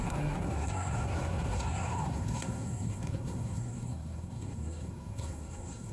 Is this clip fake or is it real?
fake